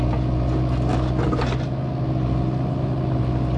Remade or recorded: recorded